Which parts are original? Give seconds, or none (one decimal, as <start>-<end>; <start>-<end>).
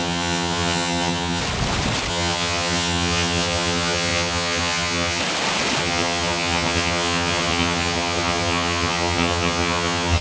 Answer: 1.4-2.1; 5.2-5.8